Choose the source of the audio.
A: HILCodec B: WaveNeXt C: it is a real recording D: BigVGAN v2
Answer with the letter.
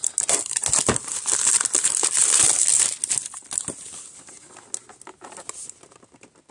C